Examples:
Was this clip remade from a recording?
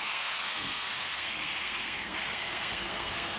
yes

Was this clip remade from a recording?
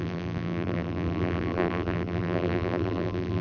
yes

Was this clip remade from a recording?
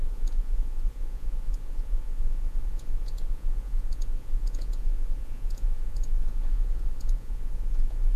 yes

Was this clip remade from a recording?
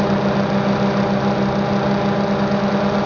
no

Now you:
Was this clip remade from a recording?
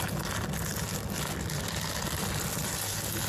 no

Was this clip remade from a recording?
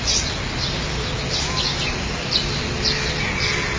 no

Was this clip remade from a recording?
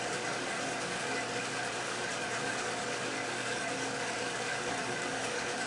yes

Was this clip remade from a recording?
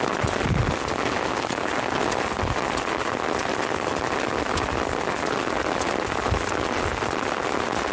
no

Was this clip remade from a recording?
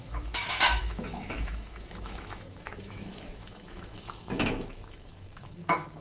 yes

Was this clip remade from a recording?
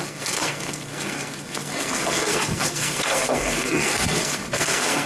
yes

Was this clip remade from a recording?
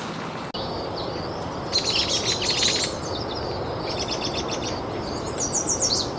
no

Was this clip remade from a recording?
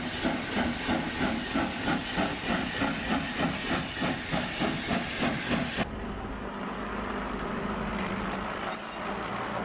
no